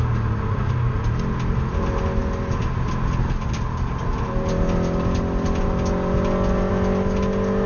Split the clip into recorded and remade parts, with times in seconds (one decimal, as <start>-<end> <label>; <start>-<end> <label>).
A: 0.0-7.7 recorded